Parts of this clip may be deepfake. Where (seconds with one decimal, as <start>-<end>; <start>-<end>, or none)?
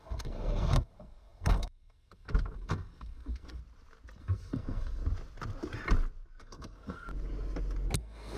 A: 0.0-3.6; 4.2-5.0; 6.4-7.1; 8.0-8.4